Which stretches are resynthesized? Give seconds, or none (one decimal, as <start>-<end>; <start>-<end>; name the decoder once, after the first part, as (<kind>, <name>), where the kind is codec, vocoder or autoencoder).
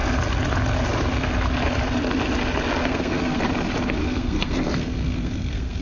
2.8-3.4 (codec, SNAC); 4.0-5.8